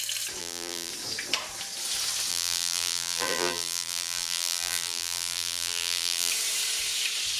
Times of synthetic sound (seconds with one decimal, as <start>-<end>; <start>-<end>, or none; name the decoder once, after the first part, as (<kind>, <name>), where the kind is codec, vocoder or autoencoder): 0.4-0.9 (vocoder, BigVGAN v2); 2.3-6.3